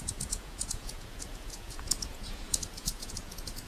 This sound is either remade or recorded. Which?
remade